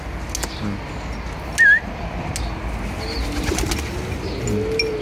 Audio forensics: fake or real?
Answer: real